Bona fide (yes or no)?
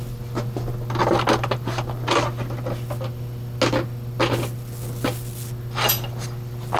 yes